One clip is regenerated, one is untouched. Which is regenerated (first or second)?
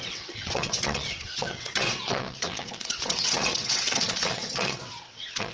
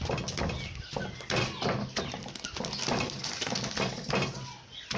first